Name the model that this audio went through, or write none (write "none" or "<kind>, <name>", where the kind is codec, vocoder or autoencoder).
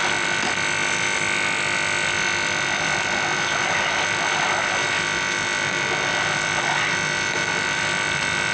none